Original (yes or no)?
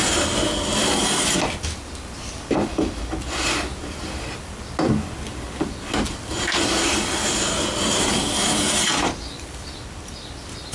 yes